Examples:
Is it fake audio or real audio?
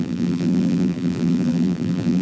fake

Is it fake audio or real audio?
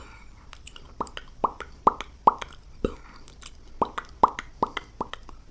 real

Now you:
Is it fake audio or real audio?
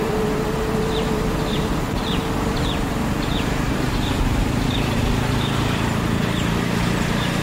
fake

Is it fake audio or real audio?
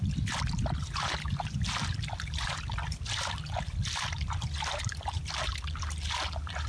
real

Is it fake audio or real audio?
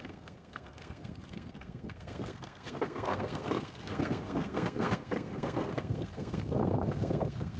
fake